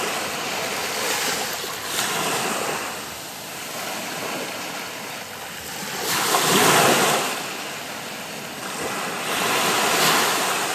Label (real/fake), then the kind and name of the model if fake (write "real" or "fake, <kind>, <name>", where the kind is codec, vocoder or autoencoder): real